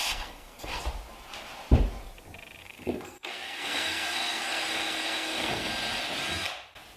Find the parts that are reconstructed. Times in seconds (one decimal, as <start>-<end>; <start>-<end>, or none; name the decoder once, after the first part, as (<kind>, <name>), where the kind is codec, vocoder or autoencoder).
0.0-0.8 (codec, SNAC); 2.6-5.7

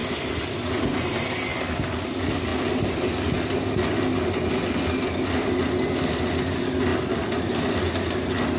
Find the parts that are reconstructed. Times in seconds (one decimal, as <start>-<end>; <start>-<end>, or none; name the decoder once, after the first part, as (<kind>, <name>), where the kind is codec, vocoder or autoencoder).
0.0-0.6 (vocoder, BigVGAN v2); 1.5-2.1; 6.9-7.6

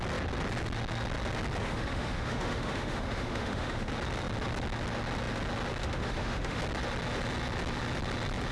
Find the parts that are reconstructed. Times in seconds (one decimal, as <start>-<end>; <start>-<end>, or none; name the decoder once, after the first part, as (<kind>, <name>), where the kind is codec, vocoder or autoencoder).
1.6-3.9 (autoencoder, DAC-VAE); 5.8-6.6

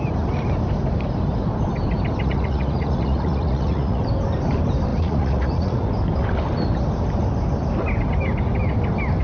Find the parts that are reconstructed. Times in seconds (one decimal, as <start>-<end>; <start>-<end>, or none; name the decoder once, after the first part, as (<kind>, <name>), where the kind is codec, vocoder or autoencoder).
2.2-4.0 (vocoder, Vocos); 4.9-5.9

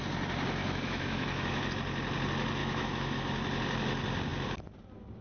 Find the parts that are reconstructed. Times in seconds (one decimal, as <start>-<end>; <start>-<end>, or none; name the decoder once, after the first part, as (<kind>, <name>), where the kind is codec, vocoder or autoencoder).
0.6-1.7 (autoencoder, DAC-VAE); 2.6-3.2